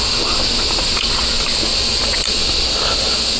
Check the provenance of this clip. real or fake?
real